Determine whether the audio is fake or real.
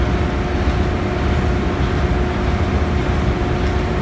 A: real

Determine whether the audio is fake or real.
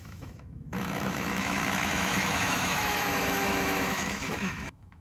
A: fake